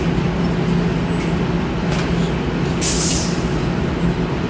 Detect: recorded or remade recorded